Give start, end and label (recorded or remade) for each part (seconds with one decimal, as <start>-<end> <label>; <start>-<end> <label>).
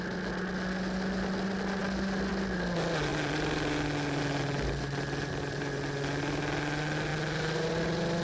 0.0-8.2 recorded